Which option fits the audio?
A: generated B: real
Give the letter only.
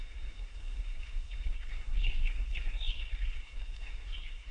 A